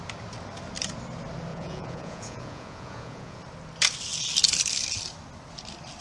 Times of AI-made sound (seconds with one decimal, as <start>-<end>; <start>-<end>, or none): 1.5-3.4